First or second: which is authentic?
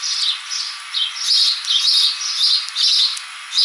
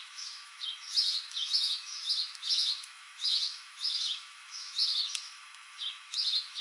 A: first